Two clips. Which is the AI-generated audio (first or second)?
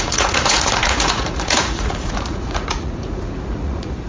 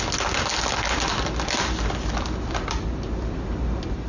first